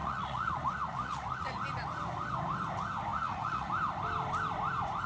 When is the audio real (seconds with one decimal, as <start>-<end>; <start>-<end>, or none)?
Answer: 1.5-3.1; 3.7-5.1